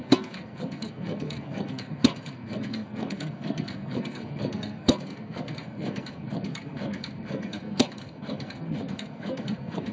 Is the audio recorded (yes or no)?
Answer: no